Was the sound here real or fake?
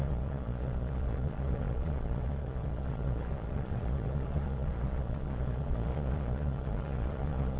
fake